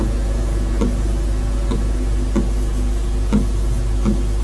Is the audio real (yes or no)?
yes